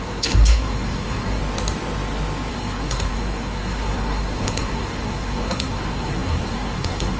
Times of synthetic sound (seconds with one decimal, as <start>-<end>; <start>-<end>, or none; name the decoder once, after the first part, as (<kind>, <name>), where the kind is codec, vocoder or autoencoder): 0.0-1.4 (codec, SNAC); 2.5-7.2